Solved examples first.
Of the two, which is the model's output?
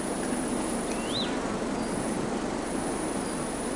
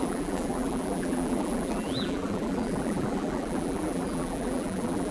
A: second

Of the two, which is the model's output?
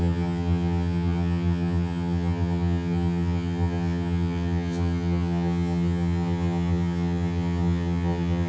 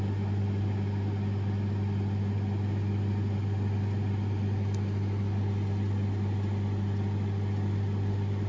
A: first